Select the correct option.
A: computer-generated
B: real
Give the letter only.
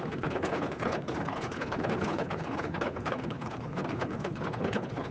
A